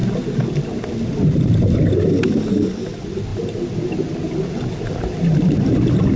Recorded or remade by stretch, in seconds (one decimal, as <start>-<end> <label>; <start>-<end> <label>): 0.0-6.2 recorded